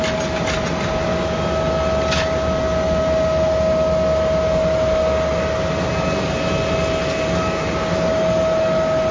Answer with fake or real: real